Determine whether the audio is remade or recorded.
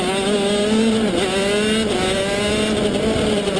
recorded